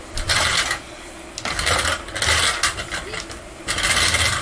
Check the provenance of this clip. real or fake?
real